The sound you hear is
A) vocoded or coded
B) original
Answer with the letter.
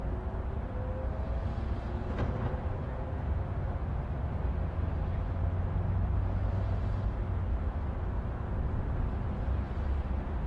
B